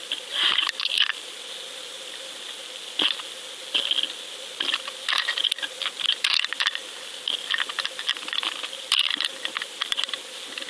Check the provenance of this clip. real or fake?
real